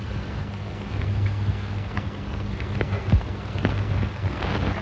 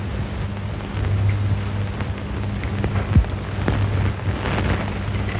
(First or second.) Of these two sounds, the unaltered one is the second